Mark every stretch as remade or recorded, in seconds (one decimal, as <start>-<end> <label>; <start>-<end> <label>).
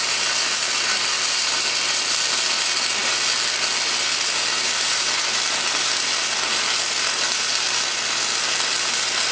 0.0-9.3 recorded